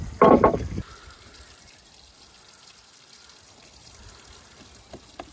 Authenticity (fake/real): real